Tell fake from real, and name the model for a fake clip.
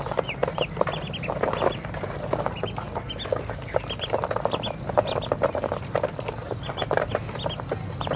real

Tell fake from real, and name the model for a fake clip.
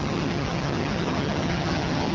fake, vocoder, HiFi-GAN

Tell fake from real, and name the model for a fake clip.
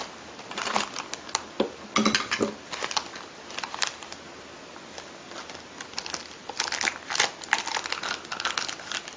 real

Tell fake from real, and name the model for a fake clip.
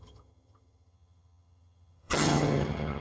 fake, vocoder, HiFi-GAN